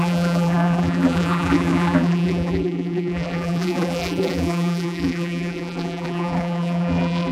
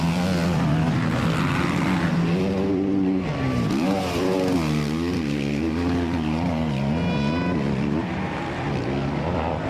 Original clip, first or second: second